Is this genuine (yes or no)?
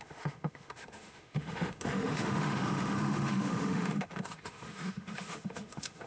no